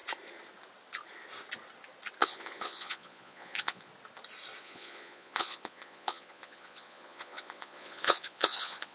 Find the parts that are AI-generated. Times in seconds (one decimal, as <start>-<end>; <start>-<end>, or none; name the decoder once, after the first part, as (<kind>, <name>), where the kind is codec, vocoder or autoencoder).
2.2-3.9 (vocoder, Vocos); 4.6-8.9